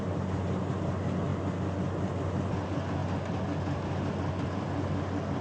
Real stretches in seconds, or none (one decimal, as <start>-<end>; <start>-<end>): 0.0-5.4